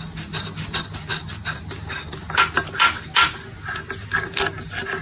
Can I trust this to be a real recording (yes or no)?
yes